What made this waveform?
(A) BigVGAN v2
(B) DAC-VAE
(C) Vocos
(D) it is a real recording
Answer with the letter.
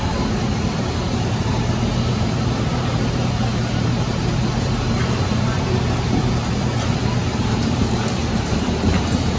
A